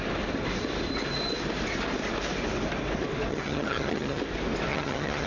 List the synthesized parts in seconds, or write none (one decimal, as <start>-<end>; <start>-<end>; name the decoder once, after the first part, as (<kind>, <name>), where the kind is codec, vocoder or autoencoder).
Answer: 3.3-4.2 (vocoder, HiFi-GAN); 4.7-5.3